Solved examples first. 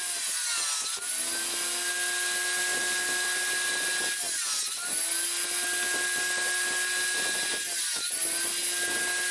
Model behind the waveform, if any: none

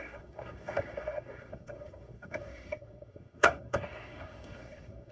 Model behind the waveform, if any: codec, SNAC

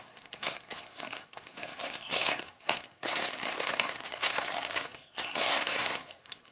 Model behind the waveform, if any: codec, SNAC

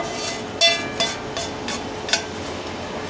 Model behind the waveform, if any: none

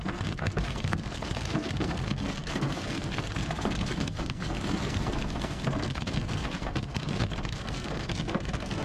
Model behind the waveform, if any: codec, SNAC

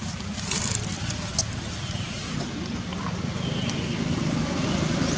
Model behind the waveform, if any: none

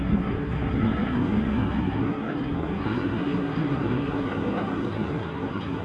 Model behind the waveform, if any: codec, SNAC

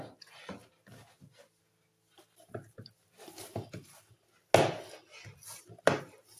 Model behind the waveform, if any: none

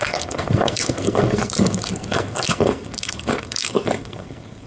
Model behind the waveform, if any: codec, SNAC